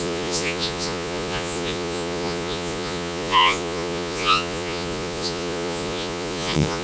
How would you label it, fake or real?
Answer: fake